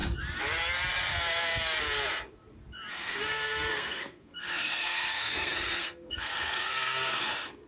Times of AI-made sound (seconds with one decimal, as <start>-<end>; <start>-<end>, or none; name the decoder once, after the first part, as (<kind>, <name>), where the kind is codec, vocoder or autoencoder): 2.9-7.7 (codec, SNAC)